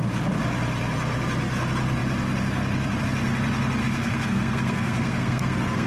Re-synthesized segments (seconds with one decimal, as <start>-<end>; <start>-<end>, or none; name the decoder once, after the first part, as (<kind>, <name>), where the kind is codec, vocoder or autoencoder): 3.8-5.9 (codec, SNAC)